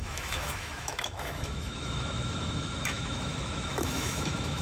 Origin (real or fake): fake